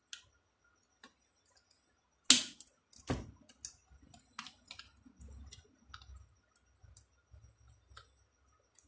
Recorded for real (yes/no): yes